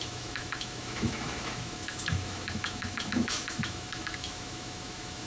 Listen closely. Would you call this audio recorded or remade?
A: remade